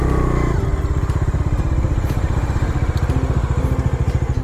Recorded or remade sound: recorded